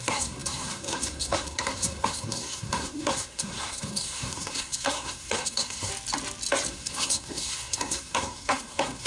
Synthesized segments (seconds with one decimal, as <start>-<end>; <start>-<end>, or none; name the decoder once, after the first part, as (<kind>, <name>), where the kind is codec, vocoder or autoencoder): 0.0-5.9 (codec, SNAC); 6.7-9.1